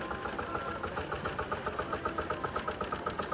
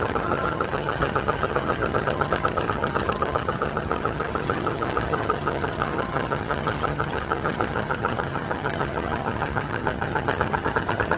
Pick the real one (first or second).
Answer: first